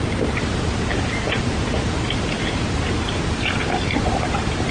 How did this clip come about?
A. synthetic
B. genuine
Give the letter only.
A